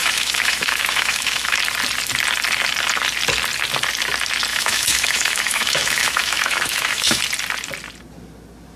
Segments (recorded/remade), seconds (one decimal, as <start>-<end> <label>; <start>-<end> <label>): 0.0-1.6 remade; 1.6-4.5 recorded; 4.5-7.2 remade; 7.2-8.8 recorded